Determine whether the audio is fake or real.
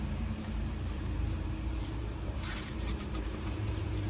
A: fake